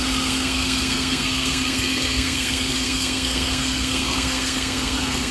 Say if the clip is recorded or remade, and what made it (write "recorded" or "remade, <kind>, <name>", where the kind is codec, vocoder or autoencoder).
remade, codec, SNAC